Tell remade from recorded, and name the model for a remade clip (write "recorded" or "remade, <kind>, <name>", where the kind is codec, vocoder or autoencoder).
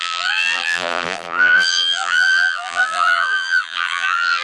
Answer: remade, vocoder, BigVGAN v2